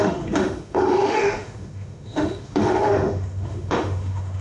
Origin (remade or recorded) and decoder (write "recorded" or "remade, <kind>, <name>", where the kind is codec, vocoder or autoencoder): remade, autoencoder, DAC-VAE